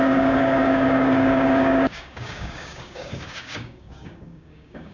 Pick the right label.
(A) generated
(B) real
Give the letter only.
A